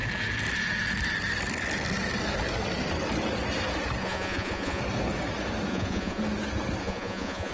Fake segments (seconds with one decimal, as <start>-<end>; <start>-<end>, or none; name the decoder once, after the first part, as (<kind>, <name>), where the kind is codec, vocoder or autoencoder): 4.0-4.8 (vocoder, Vocos); 5.7-6.2; 6.8-7.5